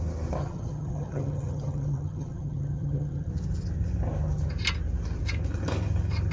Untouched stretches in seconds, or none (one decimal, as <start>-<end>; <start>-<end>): 0.0-0.4; 3.3-6.3